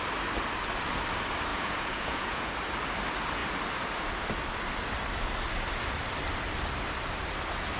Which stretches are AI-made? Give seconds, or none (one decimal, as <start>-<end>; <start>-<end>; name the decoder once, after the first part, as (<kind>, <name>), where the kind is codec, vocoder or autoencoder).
1.5-2.5 (vocoder, Vocos)

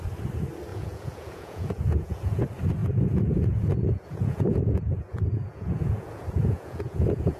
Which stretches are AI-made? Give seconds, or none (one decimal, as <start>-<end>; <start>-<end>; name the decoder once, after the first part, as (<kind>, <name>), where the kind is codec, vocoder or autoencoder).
0.7-2.4 (vocoder, Vocos); 2.8-7.4

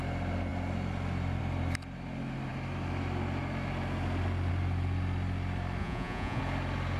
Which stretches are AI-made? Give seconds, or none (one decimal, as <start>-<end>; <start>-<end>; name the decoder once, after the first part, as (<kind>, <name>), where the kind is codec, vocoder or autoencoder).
5.8-6.4 (vocoder, Vocos)

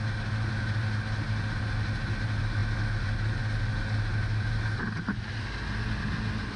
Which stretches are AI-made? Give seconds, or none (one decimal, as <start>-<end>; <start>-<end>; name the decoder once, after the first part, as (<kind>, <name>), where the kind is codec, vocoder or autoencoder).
none

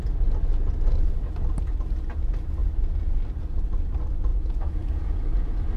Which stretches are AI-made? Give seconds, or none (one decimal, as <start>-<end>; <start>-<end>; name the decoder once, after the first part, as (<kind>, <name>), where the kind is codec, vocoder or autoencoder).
4.3-5.3 (vocoder, Vocos)

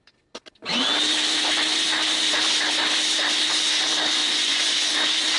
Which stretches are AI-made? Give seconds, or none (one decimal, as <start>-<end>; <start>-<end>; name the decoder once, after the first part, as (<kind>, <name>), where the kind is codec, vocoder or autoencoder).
4.2-4.9 (vocoder, Vocos)